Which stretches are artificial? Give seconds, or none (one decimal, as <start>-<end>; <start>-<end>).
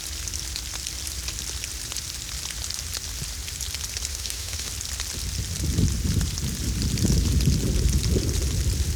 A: 4.1-4.7